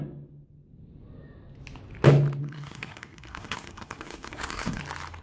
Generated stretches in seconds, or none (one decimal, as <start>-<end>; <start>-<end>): 2.4-4.8